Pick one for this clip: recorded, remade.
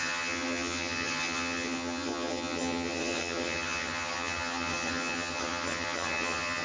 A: remade